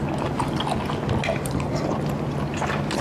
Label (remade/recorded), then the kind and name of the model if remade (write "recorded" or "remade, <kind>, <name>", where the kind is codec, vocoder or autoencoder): recorded